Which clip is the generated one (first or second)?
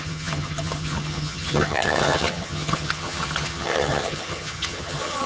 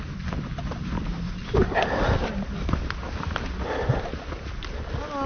first